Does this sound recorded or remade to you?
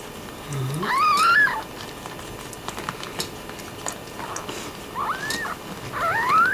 recorded